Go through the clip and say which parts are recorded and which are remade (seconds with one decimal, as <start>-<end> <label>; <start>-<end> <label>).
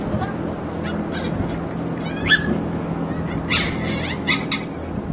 0.0-2.2 recorded; 2.2-3.1 remade; 3.1-5.1 recorded